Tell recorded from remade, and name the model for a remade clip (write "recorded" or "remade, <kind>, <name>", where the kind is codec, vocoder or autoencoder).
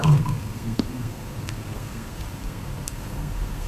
remade, codec, SNAC